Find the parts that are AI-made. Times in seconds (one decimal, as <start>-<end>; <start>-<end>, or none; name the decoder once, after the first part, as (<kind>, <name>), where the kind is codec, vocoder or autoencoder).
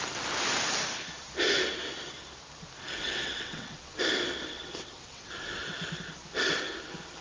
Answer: 3.0-4.0 (vocoder, WaveNeXt); 4.5-5.3